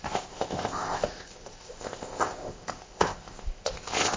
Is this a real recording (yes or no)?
no